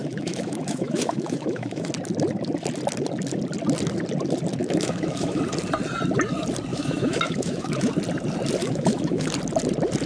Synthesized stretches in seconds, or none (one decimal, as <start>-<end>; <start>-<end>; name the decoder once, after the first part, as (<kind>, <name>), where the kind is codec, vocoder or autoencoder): 0.0-1.9 (autoencoder, DAC-VAE); 4.6-5.4; 6.7-7.9; 8.6-9.3

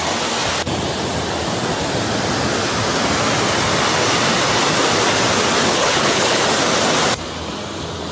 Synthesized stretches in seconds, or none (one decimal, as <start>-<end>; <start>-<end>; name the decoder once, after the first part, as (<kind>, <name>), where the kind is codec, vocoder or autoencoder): 5.7-6.4 (codec, HILCodec)

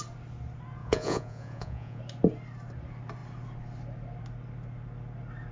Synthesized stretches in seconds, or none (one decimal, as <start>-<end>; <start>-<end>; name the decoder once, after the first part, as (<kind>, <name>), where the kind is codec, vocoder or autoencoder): 0.8-2.0 (vocoder, Vocos)

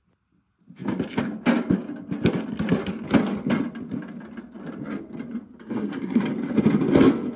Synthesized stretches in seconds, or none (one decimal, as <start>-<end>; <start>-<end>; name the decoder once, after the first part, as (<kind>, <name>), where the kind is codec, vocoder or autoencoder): 5.6-6.2 (codec, SNAC)

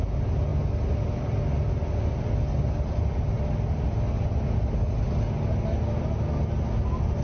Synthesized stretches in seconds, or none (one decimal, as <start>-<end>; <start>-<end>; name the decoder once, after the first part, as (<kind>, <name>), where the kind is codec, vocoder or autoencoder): none

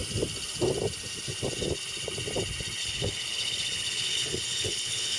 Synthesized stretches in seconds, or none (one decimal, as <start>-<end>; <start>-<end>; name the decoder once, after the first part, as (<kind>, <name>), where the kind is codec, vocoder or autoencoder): 2.8-5.2 (codec, HILCodec)

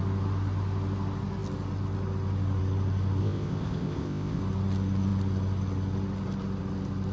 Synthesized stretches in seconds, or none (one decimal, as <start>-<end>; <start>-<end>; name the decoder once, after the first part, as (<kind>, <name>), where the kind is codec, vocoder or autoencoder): 3.2-4.4 (codec, ZipCodec)

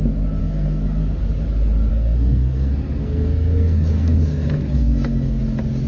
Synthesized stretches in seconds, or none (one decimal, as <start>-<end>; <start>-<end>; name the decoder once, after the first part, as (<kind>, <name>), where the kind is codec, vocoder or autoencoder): 0.4-1.2 (codec, SNAC); 1.9-5.4